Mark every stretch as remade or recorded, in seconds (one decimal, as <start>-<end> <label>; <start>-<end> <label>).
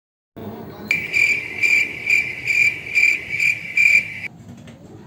0.0-5.1 recorded